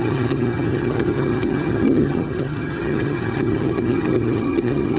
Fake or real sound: fake